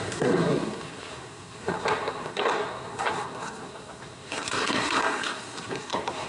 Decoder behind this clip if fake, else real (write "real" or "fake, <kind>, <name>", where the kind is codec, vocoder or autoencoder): fake, codec, SNAC